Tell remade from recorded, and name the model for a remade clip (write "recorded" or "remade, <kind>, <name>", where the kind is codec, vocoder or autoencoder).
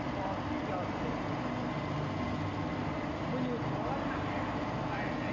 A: recorded